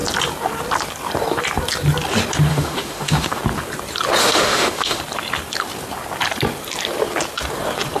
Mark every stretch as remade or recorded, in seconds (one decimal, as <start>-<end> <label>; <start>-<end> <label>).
0.0-2.5 recorded; 2.5-3.4 remade; 3.4-4.2 recorded; 4.2-5.0 remade; 5.0-8.0 recorded